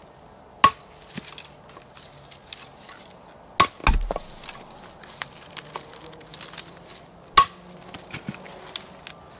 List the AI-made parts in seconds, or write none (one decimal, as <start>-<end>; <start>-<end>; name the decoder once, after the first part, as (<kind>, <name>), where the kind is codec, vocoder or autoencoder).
none